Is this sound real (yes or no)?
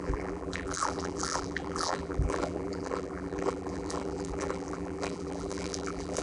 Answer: no